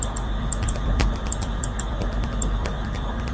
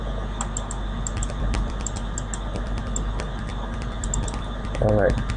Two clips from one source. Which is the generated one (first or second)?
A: first